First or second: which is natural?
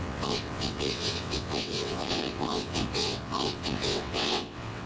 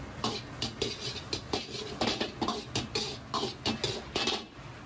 second